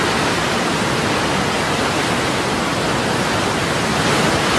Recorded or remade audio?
recorded